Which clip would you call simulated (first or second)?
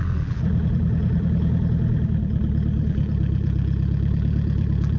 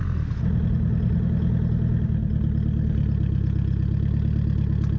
first